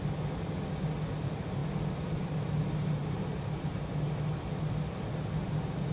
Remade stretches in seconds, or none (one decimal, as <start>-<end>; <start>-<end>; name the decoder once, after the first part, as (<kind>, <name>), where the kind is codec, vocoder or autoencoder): none